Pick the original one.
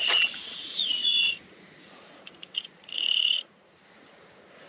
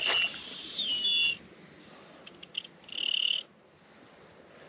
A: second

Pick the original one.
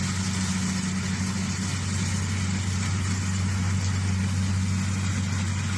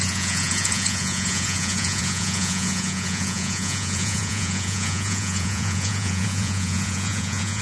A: first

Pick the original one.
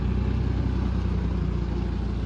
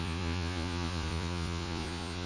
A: first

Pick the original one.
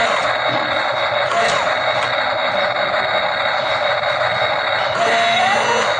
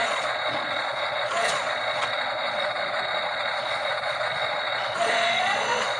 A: first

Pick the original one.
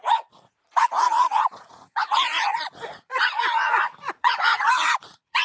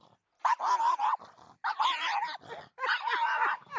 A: second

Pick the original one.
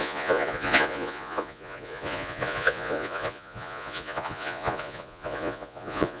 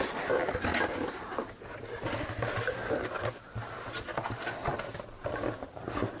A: second